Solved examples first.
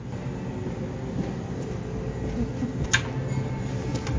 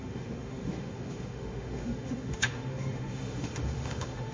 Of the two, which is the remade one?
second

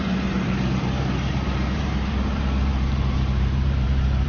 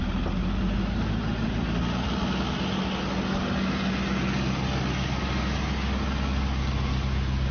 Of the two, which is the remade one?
first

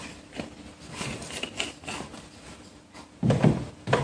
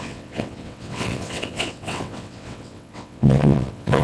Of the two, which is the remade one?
second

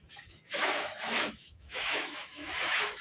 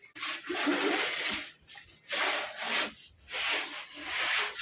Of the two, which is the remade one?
first